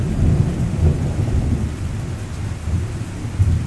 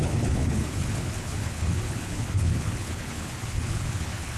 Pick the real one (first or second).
first